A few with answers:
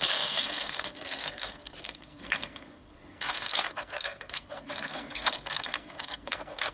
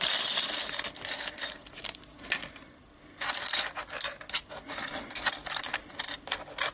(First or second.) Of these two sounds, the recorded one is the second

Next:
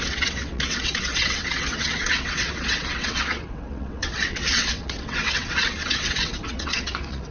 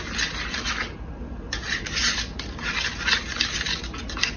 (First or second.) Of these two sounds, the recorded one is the second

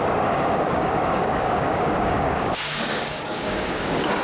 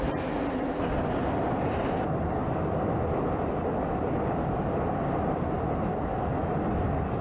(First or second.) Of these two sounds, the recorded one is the second